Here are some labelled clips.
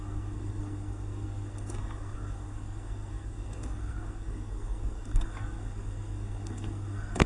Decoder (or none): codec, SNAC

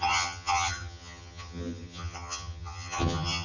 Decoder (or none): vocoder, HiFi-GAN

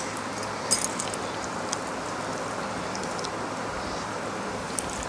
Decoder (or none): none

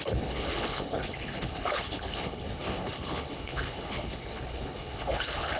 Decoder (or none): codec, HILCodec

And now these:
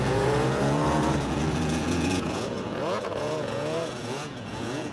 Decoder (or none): vocoder, Vocos